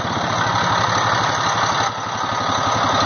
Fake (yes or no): no